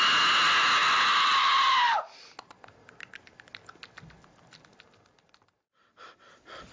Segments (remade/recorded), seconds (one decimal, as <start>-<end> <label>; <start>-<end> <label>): 0.0-6.7 recorded